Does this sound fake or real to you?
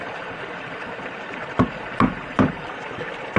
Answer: fake